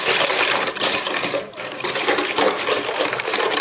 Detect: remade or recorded remade